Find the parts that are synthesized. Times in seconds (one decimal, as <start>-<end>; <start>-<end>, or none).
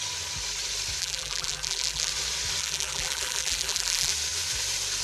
1.0-2.1; 2.6-4.1